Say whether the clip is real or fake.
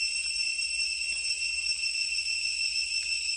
real